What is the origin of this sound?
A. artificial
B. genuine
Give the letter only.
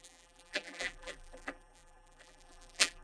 A